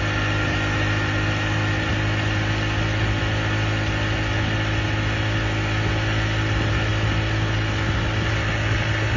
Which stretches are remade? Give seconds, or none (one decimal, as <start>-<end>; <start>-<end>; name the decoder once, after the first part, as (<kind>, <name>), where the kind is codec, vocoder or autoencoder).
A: none